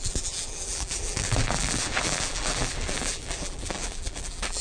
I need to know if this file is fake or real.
fake